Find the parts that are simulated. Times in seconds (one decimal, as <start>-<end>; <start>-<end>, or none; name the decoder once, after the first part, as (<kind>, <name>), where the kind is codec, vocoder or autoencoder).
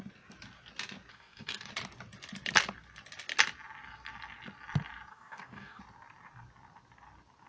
1.1-1.7 (codec, DAC); 5.1-5.8